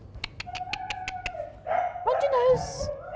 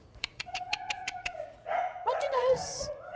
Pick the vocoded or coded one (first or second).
second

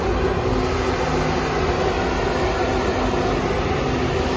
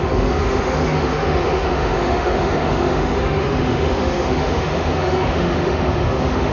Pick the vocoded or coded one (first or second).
second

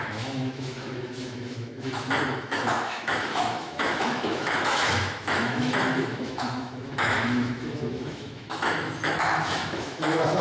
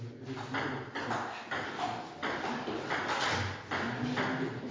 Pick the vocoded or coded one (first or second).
first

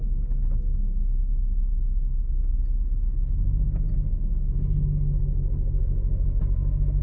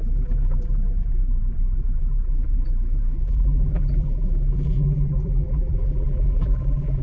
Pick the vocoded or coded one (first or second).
second